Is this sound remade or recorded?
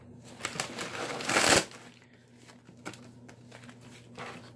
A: recorded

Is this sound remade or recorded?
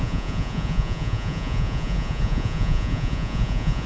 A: remade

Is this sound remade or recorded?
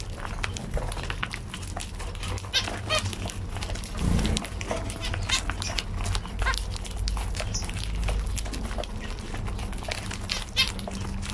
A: recorded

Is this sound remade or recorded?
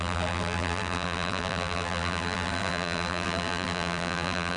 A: remade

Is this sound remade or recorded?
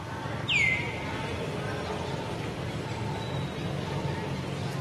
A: recorded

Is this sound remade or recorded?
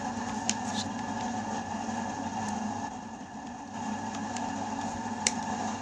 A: remade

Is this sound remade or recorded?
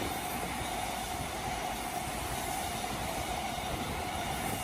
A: recorded